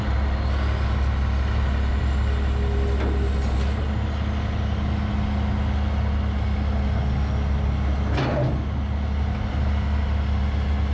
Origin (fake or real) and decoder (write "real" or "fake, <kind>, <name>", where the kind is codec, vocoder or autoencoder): real